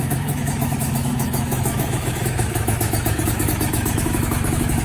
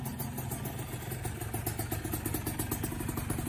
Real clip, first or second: second